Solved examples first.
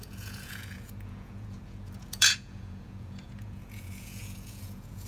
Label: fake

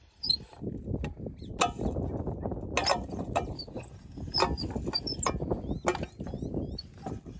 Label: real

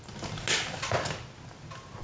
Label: real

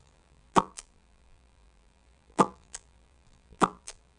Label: fake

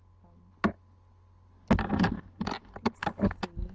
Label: real